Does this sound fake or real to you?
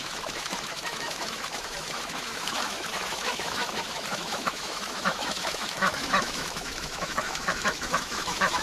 fake